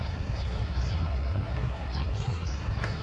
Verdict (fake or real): fake